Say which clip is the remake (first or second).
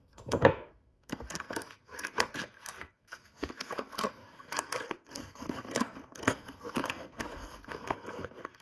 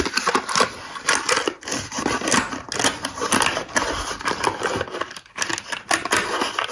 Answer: first